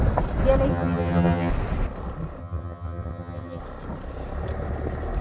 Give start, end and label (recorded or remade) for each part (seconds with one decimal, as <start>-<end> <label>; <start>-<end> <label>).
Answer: 0.0-0.7 recorded; 0.7-1.5 remade; 1.5-2.4 recorded; 2.4-3.6 remade; 3.6-5.2 recorded